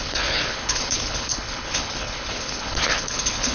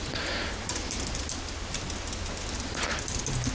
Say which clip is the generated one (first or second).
first